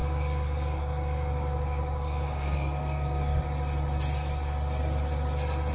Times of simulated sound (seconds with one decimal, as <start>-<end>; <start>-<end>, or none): 0.0-3.4